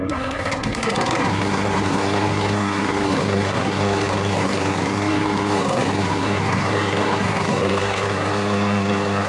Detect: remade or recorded remade